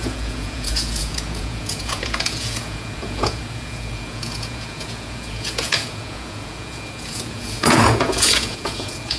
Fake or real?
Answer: fake